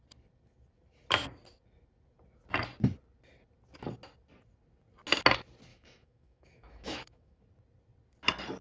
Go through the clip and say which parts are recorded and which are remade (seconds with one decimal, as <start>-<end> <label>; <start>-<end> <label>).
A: 0.0-5.7 recorded; 5.7-7.4 remade; 7.4-8.6 recorded